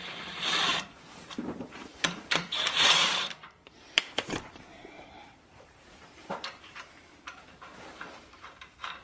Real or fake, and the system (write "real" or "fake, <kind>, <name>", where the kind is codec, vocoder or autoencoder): fake, vocoder, BigVGAN v2